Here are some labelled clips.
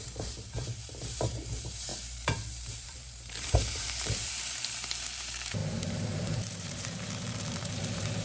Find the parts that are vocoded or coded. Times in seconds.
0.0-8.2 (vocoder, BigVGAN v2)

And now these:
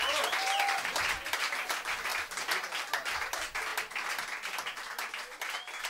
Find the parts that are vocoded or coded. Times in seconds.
none

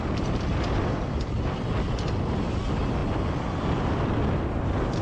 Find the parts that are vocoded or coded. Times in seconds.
none

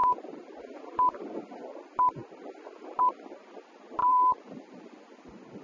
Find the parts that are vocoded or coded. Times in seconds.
0.0-0.6 (vocoder, BigVGAN v2); 4.0-4.7

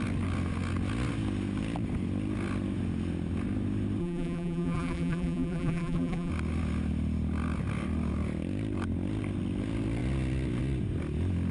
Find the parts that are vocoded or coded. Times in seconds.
4.0-6.3 (vocoder, BigVGAN v2)

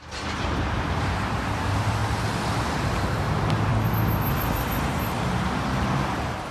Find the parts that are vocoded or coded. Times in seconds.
0.0-2.0 (vocoder, BigVGAN v2); 3.0-3.7; 5.6-6.5

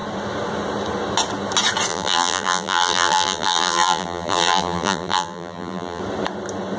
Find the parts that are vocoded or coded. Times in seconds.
1.9-6.0 (vocoder, BigVGAN v2)

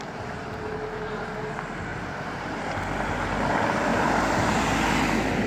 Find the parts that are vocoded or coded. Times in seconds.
1.9-2.6 (vocoder, BigVGAN v2); 3.9-4.5